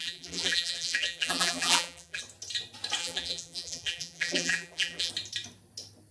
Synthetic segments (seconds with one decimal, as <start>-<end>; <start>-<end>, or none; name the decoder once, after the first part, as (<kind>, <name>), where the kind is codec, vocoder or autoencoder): 0.0-2.2 (vocoder, BigVGAN v2); 3.0-5.1